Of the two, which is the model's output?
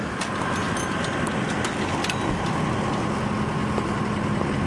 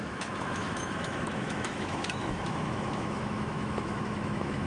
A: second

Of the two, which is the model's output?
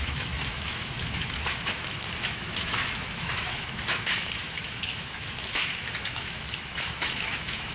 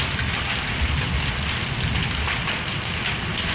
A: first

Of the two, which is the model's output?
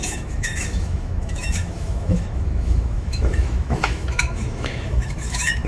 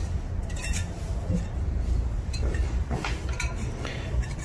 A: first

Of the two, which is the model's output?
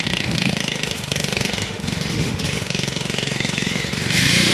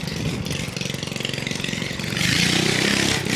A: first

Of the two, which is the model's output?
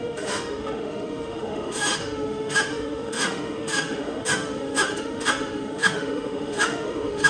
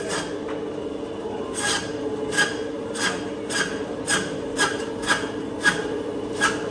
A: first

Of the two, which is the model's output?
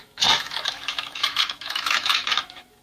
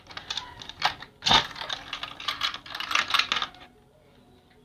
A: first